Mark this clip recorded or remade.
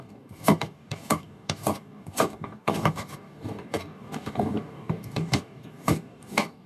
remade